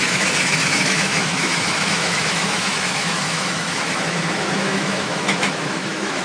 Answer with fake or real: fake